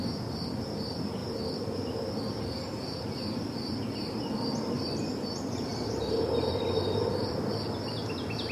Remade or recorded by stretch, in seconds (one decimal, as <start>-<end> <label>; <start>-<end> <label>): 0.0-1.2 recorded; 1.2-2.2 remade; 2.2-5.7 recorded; 5.7-7.5 remade; 7.5-8.5 recorded